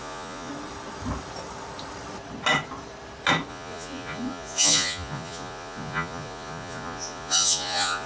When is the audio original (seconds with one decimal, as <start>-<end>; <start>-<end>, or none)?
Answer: 0.5-3.5